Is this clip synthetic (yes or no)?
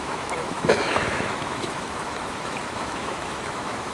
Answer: yes